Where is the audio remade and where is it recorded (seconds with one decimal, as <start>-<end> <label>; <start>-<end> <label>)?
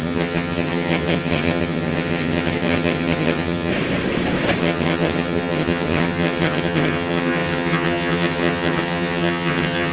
0.0-3.7 remade; 3.7-4.6 recorded; 4.6-9.9 remade